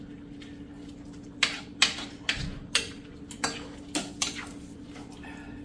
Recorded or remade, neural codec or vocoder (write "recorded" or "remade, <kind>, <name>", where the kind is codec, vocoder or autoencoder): recorded